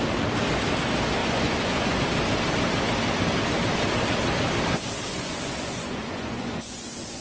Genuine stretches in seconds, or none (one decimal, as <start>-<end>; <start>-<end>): 0.0-1.2; 2.0-5.1